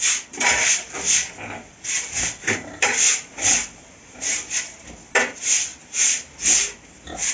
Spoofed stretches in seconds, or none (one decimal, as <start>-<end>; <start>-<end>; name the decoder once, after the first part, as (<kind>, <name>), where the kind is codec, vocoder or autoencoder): 2.4-4.6 (vocoder, BigVGAN v2)